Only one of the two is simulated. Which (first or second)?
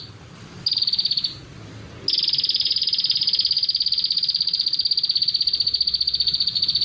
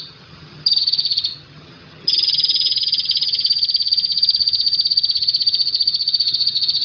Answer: second